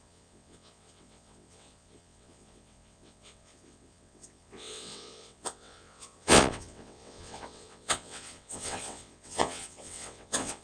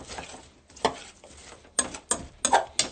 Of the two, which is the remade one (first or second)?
first